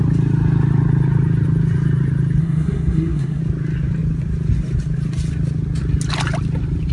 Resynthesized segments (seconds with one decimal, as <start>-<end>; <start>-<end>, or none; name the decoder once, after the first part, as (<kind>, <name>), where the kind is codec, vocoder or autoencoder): 2.4-3.4 (codec, SNAC)